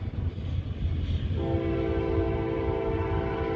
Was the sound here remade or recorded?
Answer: recorded